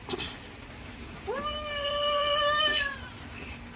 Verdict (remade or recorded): remade